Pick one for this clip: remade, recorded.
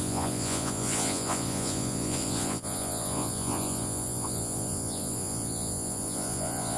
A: remade